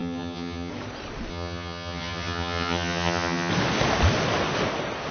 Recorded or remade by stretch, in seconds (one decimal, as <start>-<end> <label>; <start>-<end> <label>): 0.0-0.7 remade; 0.7-1.3 recorded; 1.3-3.5 remade; 3.5-5.1 recorded